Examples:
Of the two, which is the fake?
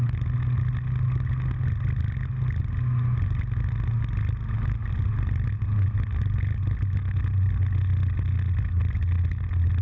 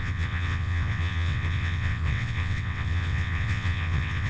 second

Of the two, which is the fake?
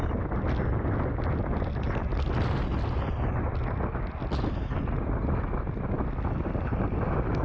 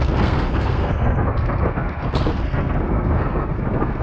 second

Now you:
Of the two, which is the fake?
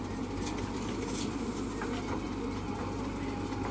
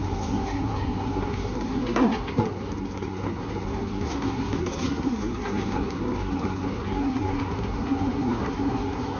second